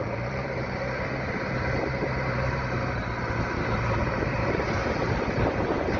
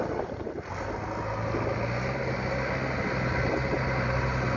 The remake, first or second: first